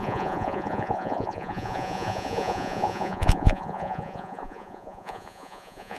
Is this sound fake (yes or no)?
yes